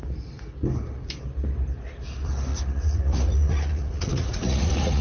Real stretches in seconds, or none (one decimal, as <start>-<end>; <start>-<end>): 0.0-2.5